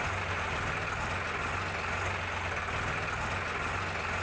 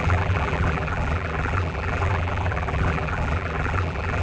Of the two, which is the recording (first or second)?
first